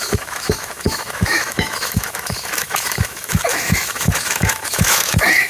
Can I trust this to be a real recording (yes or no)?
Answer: no